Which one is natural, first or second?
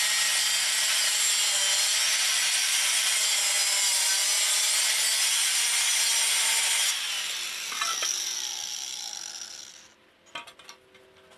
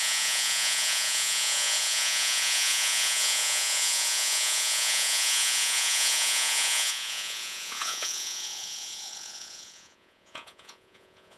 first